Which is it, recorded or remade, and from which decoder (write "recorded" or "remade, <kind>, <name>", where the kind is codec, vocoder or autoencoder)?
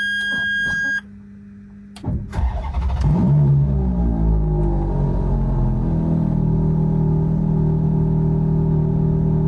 recorded